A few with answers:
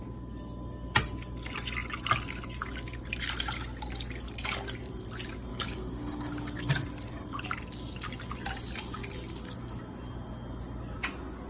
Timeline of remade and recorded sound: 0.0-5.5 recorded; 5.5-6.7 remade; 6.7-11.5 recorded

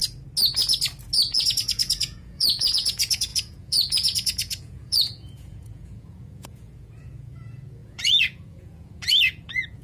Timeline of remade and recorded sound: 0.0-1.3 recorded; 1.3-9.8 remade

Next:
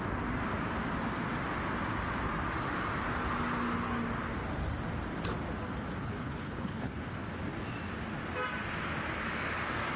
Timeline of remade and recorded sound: 0.0-6.0 recorded; 6.0-7.0 remade; 7.0-10.0 recorded

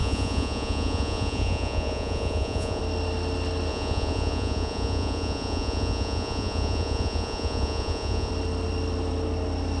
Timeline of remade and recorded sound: 0.0-2.8 remade; 2.8-3.7 recorded; 3.7-8.3 remade; 8.3-9.8 recorded

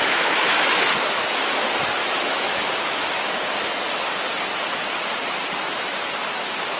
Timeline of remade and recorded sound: 0.0-1.6 remade; 1.6-2.0 recorded; 2.0-3.5 remade; 3.5-6.8 recorded

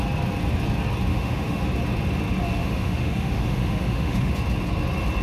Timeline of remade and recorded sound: 0.0-1.1 recorded; 1.1-1.6 remade; 1.6-2.6 recorded; 2.6-4.3 remade; 4.3-5.2 recorded

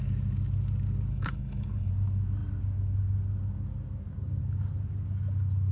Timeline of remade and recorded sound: 0.0-1.1 recorded; 1.1-1.9 remade; 1.9-5.7 recorded

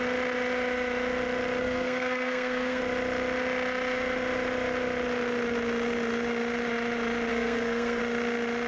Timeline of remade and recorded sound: 0.0-1.6 recorded; 1.6-2.8 remade; 2.8-7.3 recorded; 7.3-8.0 remade; 8.0-8.7 recorded